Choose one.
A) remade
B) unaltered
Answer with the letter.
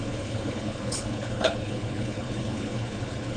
A